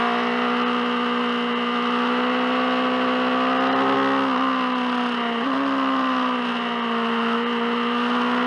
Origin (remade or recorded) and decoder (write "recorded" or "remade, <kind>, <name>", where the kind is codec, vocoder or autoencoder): recorded